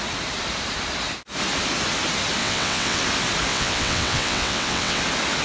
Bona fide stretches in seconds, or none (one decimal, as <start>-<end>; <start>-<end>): 0.0-2.4; 3.0-3.5; 5.0-5.4